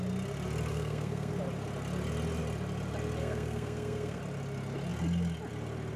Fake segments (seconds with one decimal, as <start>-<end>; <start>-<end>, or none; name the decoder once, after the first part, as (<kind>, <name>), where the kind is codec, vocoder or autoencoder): 0.7-1.3 (codec, SNAC); 3.2-4.2

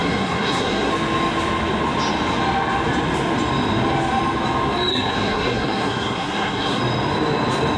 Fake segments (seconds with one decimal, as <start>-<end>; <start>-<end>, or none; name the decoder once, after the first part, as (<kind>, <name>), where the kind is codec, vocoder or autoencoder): 0.0-0.9 (codec, SNAC); 4.9-6.8

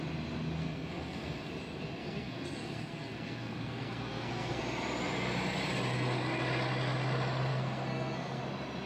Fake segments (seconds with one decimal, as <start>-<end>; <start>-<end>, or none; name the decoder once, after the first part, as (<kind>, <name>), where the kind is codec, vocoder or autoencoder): 0.6-1.5 (codec, SNAC); 2.0-4.6; 7.5-8.4